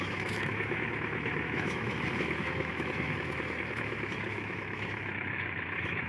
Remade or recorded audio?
remade